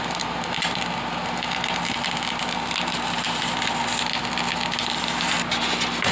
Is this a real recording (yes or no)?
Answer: yes